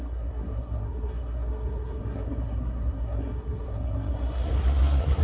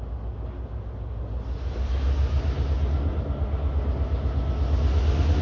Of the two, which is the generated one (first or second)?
first